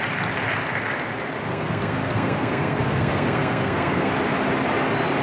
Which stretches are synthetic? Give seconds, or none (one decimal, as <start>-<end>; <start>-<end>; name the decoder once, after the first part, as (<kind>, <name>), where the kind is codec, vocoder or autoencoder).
1.5-4.1 (codec, SNAC)